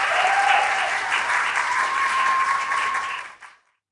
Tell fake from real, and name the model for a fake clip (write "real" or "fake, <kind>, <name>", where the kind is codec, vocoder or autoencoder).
fake, vocoder, BigVGAN v2